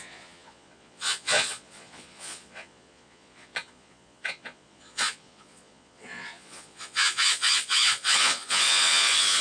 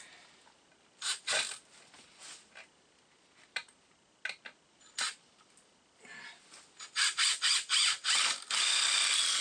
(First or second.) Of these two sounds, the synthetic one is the first